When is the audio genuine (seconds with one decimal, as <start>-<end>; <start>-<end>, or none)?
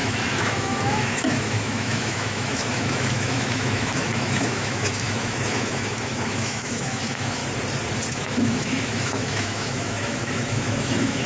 7.4-8.1